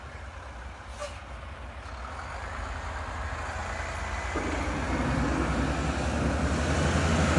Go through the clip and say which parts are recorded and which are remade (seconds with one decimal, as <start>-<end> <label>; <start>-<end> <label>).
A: 0.0-7.4 recorded